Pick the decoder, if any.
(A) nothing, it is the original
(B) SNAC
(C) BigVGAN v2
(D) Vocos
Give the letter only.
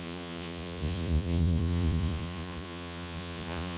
D